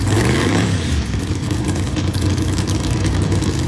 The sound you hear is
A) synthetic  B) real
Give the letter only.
A